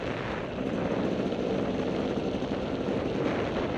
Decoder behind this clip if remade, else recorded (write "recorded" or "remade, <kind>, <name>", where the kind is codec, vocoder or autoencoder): recorded